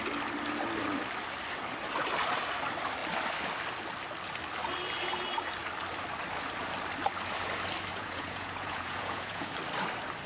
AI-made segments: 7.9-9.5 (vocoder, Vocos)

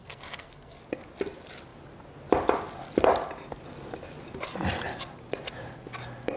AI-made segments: 0.0-0.8 (codec, SNAC)